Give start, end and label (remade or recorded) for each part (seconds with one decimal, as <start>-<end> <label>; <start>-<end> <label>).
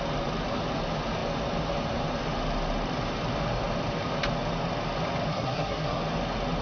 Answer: 0.0-5.3 recorded; 5.3-6.0 remade; 6.0-6.6 recorded